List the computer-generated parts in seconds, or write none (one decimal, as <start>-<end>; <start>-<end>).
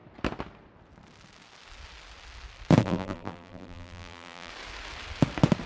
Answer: 2.8-4.5